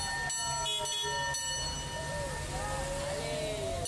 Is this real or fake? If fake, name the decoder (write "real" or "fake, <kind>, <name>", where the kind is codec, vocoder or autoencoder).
real